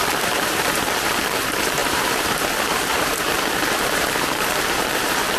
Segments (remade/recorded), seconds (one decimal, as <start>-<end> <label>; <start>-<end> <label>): 0.0-5.4 remade